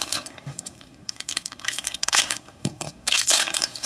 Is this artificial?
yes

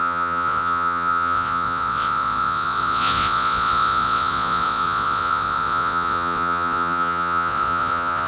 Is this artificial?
yes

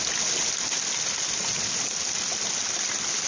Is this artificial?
no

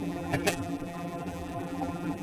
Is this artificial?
yes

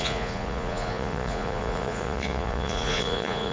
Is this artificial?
yes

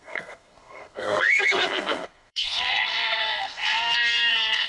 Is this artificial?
yes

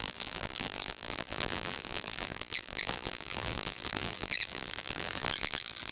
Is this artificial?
yes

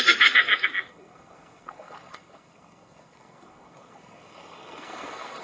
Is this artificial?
yes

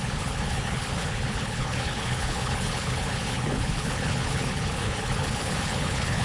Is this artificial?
yes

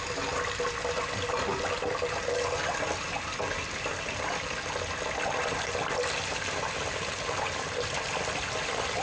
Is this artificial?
no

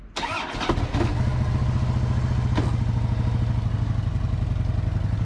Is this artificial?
no